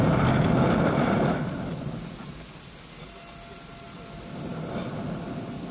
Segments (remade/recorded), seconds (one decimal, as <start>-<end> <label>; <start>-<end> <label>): 0.0-5.7 recorded